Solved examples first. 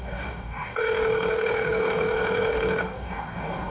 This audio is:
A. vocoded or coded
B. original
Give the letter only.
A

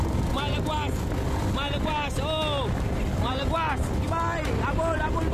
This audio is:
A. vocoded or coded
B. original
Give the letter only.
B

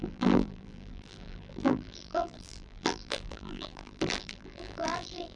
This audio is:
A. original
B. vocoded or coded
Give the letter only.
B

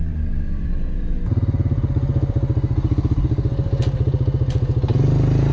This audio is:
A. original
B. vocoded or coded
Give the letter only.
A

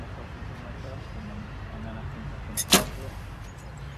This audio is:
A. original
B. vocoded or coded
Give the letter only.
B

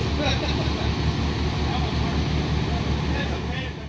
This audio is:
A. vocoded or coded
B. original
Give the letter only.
B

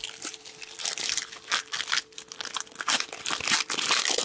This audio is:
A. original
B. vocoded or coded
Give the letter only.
B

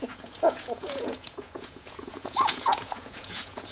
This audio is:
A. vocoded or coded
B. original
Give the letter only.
A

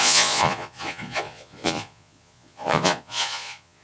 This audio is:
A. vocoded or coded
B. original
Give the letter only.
A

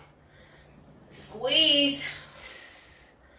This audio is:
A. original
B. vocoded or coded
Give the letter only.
A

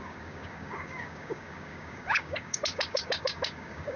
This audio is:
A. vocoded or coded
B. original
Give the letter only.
A